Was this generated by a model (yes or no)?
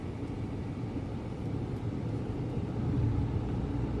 no